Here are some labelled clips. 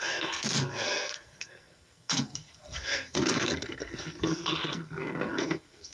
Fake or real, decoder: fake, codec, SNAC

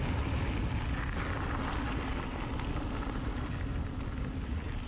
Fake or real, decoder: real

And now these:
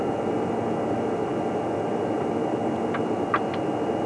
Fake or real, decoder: real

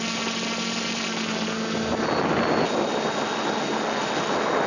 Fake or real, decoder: real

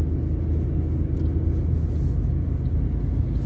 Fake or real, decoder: real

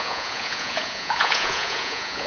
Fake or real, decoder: fake, vocoder, Vocos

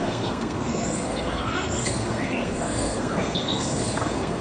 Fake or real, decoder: fake, codec, SNAC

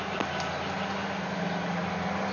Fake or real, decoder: real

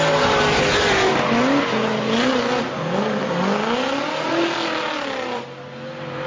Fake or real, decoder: real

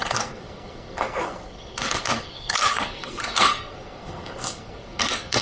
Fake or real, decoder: fake, codec, SNAC